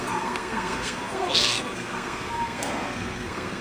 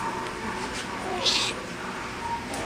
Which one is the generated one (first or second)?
first